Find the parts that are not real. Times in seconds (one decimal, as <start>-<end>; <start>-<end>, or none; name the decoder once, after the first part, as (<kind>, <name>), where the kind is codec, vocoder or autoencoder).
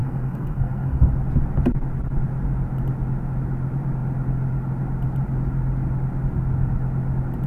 0.0-1.1 (codec, SNAC)